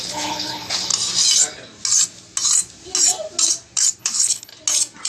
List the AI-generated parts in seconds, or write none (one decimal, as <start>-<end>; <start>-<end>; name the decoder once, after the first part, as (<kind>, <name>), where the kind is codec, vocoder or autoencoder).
0.0-0.9 (codec, HILCodec); 4.0-4.5